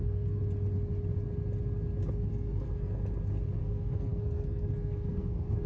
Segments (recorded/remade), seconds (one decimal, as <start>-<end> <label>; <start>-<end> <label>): 0.0-0.4 remade; 0.4-2.3 recorded; 2.3-3.0 remade; 3.0-3.6 recorded; 3.6-5.7 remade

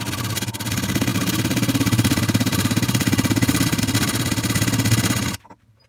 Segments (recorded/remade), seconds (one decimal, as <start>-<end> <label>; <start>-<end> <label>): 0.0-1.1 recorded; 1.1-3.8 remade; 3.8-5.9 recorded

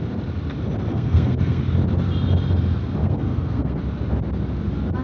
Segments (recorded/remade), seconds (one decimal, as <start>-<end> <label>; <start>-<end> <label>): 0.0-0.9 recorded; 0.9-1.6 remade; 1.6-3.0 recorded; 3.0-3.8 remade; 3.8-5.0 recorded

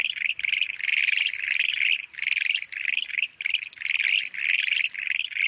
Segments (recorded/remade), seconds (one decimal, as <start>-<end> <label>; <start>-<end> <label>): 0.0-5.5 recorded

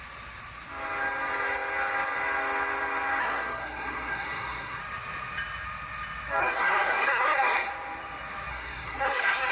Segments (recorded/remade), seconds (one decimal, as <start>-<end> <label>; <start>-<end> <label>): 0.0-3.2 recorded; 3.2-4.8 remade; 4.8-6.4 recorded; 6.4-7.7 remade; 7.7-8.5 recorded; 8.5-9.5 remade

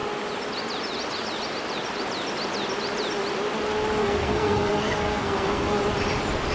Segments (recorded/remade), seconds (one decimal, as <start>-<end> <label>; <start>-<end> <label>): 0.0-4.0 recorded; 4.0-5.8 remade; 5.8-6.5 recorded

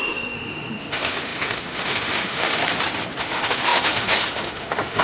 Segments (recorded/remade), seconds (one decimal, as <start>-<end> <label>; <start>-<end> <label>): 0.0-2.6 remade; 2.6-3.2 recorded; 3.2-5.0 remade

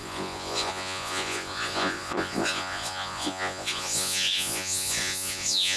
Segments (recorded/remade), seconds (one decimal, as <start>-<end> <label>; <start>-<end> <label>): 0.0-5.8 remade